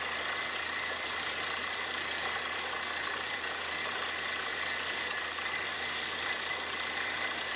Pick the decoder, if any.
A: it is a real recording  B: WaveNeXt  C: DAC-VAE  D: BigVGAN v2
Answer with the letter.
D